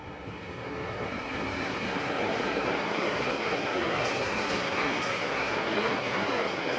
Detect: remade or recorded remade